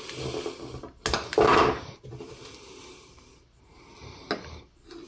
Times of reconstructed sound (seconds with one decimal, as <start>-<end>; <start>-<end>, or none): none